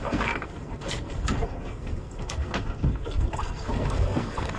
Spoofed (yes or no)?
yes